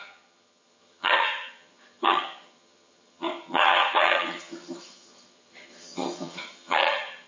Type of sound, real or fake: fake